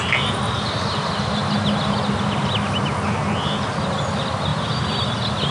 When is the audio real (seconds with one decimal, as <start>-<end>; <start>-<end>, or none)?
0.0-5.5